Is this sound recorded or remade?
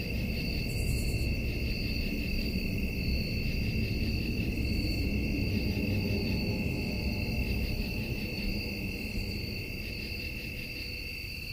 recorded